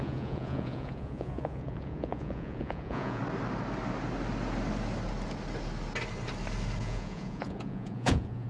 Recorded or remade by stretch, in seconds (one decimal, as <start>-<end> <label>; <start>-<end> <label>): 0.0-3.2 remade; 3.2-6.8 recorded; 6.8-8.5 remade